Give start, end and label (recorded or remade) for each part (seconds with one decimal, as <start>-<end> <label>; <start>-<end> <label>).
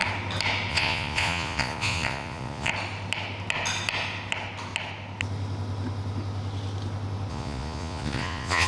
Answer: 0.0-0.7 recorded; 0.7-2.7 remade; 2.7-7.3 recorded; 7.3-8.7 remade